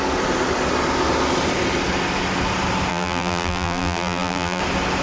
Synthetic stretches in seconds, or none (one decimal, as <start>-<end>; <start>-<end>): 2.9-4.6